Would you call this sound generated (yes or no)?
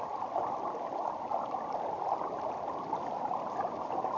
no